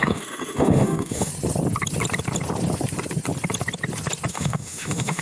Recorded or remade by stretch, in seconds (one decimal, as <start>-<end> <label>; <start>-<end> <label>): 0.0-1.3 remade; 1.3-4.3 recorded; 4.3-5.2 remade